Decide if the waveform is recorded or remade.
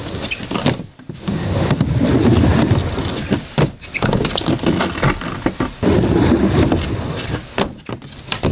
recorded